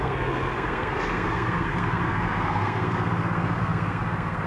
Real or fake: fake